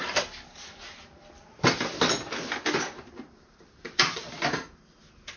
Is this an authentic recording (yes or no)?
yes